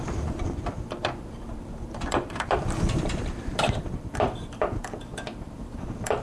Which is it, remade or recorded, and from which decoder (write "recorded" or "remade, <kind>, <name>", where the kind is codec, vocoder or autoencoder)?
remade, vocoder, BigVGAN v2